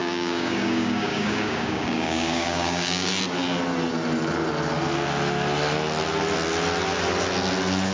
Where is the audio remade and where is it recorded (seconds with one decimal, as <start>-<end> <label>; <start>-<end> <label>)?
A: 0.0-3.1 remade; 3.1-7.9 recorded